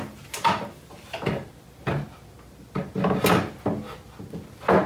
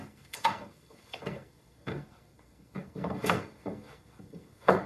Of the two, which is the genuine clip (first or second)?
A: first